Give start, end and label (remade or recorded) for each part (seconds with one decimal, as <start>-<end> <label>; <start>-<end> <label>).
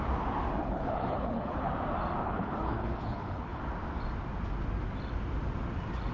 0.0-0.6 recorded; 0.6-1.7 remade; 1.7-2.2 recorded; 2.2-3.6 remade; 3.6-6.1 recorded